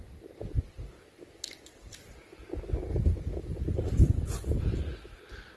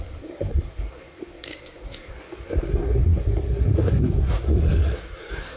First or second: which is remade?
second